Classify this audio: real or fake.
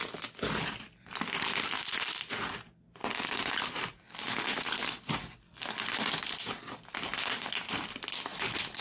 real